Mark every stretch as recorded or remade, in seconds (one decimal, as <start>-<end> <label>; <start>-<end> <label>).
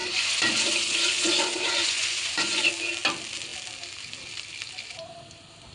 0.0-2.7 remade; 2.7-5.7 recorded